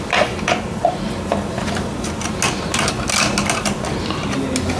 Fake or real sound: real